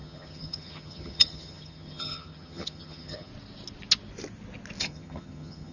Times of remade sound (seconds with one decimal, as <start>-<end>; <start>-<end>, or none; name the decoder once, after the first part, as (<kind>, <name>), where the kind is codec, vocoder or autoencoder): 0.0-3.3 (vocoder, HiFi-GAN); 4.8-5.7